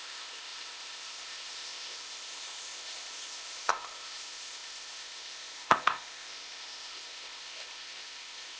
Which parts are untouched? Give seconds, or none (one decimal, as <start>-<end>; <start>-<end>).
none